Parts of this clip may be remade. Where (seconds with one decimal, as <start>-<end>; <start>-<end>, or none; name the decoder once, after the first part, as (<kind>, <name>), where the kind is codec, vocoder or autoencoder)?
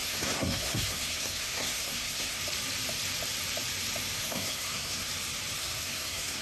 0.0-2.4 (codec, SNAC); 4.2-5.1; 5.6-6.4